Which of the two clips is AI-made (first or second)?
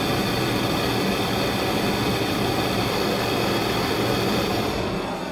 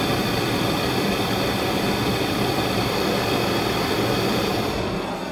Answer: second